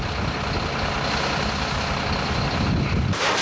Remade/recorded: recorded